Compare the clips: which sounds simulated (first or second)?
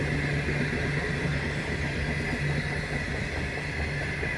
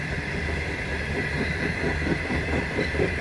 second